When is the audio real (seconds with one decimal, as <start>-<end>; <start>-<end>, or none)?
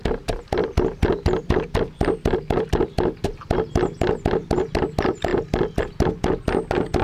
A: 0.0-7.0